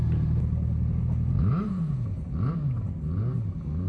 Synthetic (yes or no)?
no